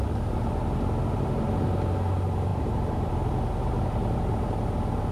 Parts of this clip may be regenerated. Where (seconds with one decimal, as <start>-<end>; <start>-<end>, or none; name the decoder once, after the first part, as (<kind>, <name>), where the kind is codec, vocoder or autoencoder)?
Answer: 2.5-3.1 (vocoder, BigVGAN v2)